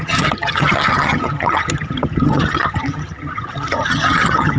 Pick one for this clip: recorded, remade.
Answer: remade